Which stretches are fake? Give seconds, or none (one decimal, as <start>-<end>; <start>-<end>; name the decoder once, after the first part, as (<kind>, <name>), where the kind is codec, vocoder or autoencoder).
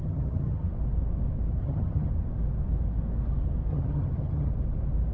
0.0-0.7 (vocoder, HiFi-GAN); 1.6-2.1; 3.7-4.5